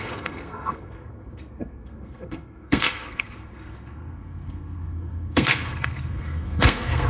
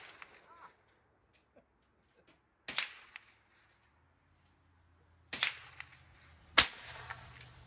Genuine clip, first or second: second